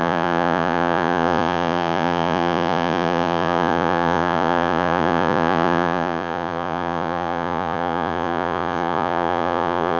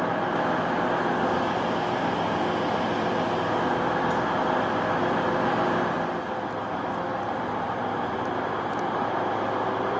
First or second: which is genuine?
second